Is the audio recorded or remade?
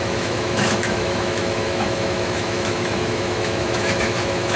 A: remade